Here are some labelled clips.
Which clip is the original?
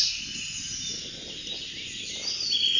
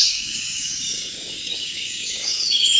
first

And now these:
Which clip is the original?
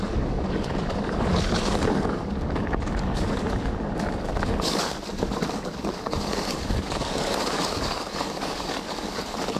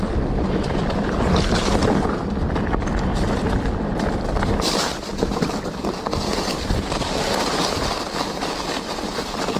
second